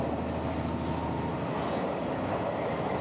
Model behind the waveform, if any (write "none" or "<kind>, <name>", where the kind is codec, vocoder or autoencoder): none